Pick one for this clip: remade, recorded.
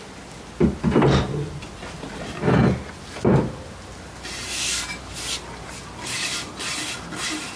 recorded